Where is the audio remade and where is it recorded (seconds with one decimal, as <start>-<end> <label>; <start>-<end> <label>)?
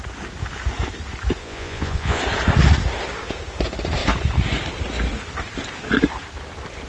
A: 0.0-1.4 recorded; 1.4-2.2 remade; 2.2-6.9 recorded